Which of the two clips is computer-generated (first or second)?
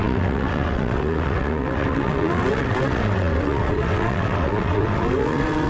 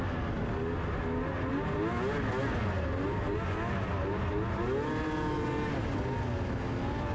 first